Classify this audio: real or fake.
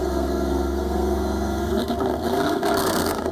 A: fake